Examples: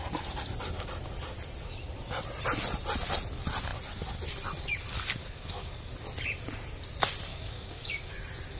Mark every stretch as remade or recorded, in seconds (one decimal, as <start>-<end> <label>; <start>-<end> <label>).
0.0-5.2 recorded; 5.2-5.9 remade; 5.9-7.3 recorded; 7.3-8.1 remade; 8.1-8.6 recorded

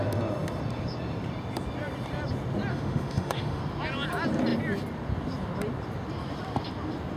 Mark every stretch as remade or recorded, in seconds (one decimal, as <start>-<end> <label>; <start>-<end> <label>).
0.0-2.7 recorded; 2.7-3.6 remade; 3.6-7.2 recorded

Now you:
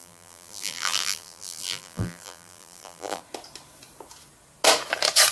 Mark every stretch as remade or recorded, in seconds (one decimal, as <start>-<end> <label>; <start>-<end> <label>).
0.0-3.2 remade; 3.2-5.3 recorded